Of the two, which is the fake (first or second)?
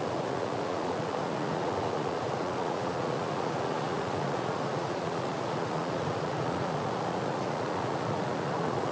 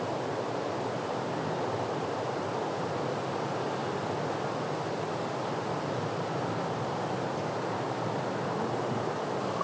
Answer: first